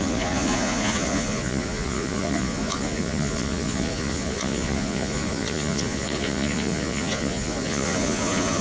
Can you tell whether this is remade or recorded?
remade